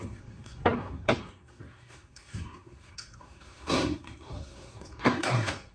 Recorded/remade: remade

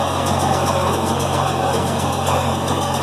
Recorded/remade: remade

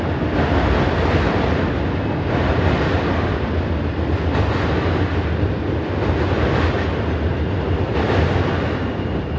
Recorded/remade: recorded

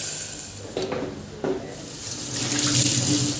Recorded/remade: recorded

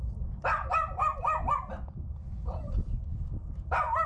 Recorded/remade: recorded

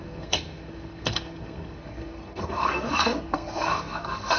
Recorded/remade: remade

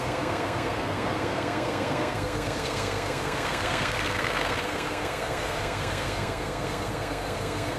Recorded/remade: remade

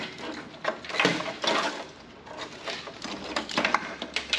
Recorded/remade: recorded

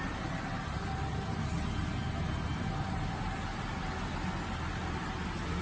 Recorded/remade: recorded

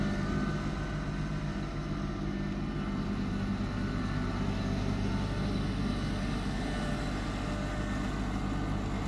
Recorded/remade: recorded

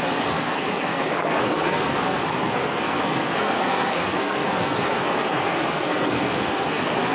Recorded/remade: remade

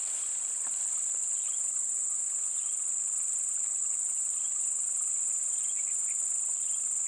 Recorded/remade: recorded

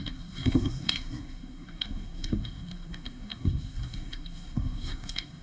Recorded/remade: remade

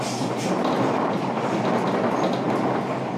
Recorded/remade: recorded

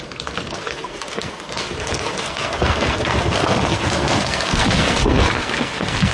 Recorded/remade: remade